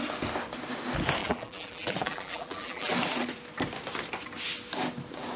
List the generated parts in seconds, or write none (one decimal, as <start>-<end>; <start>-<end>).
1.2-2.9